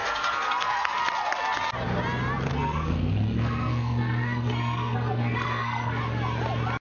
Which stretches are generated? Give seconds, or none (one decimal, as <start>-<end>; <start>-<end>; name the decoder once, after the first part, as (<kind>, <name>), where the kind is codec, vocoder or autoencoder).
0.0-1.0 (codec, SNAC); 2.5-6.0